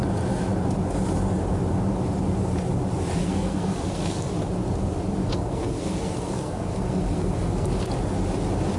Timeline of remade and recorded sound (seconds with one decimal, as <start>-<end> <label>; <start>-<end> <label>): 0.0-3.2 recorded; 3.2-4.3 remade; 4.3-5.2 recorded; 5.2-7.9 remade; 7.9-8.8 recorded